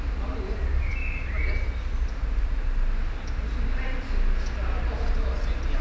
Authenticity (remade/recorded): recorded